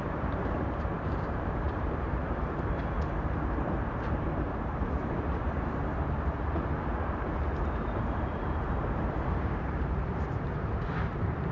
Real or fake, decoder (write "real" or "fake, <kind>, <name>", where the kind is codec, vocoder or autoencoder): fake, vocoder, BigVGAN v2